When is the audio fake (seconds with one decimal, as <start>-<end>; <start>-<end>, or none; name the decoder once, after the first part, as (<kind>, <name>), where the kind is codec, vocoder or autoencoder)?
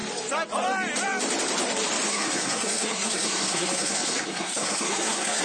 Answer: 2.1-5.4 (codec, SNAC)